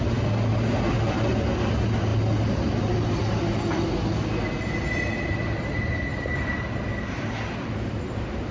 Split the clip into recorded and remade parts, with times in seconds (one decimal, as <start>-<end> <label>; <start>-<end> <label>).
0.0-8.5 recorded